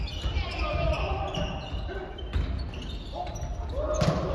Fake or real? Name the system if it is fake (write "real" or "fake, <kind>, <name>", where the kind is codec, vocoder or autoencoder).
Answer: real